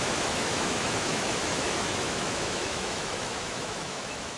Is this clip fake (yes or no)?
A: yes